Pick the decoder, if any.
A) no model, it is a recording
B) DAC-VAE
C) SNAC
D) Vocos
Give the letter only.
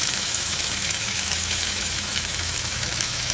B